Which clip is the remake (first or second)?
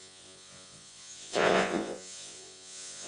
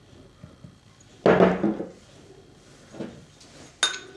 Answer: first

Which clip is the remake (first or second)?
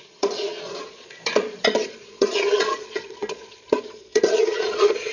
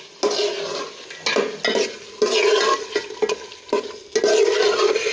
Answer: first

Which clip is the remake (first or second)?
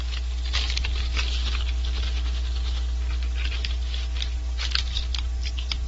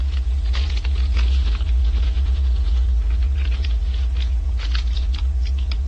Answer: second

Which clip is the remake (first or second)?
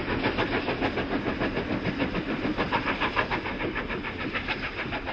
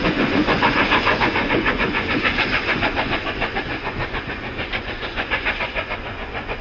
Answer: second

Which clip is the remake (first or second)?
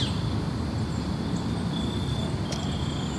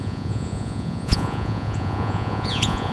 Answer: second